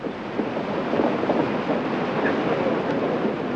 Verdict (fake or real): real